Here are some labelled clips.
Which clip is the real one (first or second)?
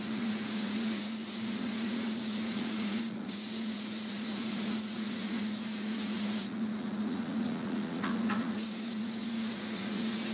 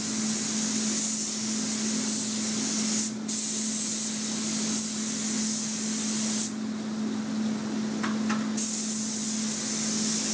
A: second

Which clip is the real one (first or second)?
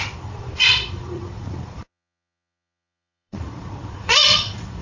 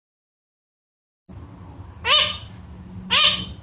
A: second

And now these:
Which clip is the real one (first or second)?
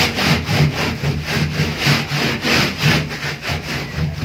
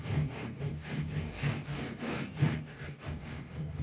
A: first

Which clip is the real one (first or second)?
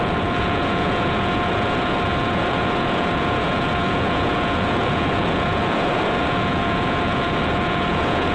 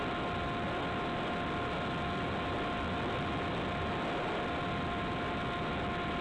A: second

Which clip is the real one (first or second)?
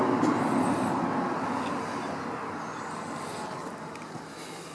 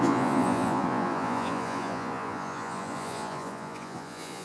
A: first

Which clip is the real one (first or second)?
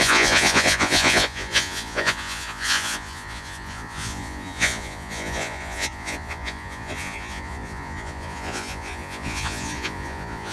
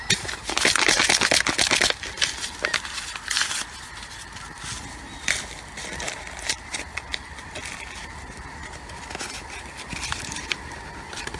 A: second